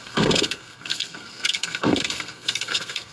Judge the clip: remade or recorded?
remade